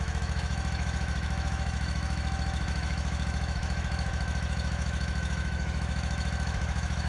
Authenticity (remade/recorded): remade